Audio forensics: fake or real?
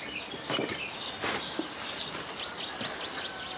real